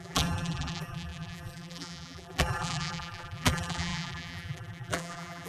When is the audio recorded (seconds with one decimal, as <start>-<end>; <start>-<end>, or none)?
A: none